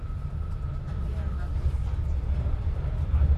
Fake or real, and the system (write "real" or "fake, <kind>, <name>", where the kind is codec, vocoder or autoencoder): real